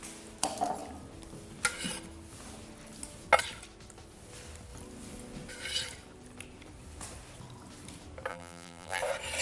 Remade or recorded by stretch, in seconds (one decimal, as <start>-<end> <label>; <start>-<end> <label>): 0.0-8.3 recorded; 8.3-9.0 remade; 9.0-9.4 recorded